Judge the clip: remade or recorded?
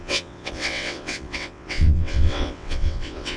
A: remade